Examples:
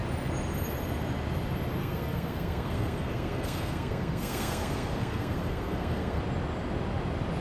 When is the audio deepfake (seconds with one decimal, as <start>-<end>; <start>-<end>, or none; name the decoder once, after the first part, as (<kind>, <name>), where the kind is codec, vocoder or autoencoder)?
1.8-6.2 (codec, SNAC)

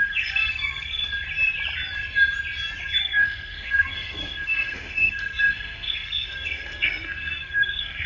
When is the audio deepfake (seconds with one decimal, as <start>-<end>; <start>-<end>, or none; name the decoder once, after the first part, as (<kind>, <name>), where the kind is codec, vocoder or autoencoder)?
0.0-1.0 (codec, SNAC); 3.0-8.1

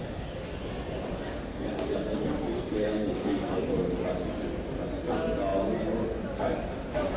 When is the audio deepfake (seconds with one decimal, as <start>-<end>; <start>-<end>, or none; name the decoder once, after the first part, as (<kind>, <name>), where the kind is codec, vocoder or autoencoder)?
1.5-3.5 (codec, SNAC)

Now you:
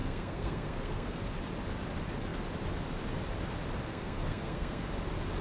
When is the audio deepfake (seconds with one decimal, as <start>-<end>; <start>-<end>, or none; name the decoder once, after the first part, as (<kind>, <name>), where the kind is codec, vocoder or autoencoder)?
0.0-1.2 (codec, SNAC); 3.9-4.9